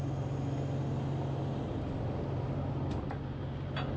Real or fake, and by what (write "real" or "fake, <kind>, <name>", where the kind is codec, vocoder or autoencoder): real